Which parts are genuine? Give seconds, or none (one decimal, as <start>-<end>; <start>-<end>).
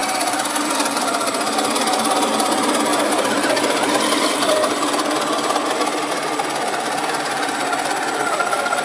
0.0-1.0